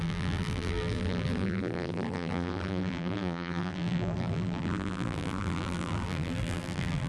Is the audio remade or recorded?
remade